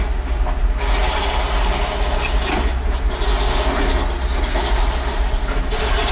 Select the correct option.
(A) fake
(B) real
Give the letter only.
B